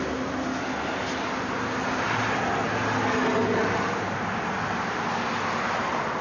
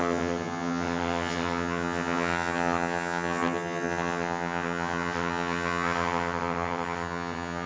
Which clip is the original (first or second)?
first